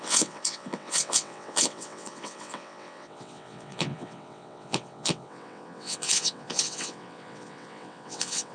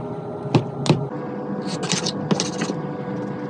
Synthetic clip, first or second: first